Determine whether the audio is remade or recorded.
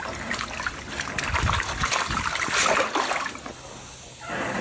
recorded